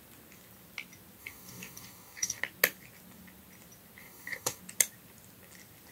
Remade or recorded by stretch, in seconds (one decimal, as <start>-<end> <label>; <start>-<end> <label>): 0.0-1.2 recorded; 1.2-2.4 remade; 2.4-4.0 recorded; 4.0-4.6 remade; 4.6-5.9 recorded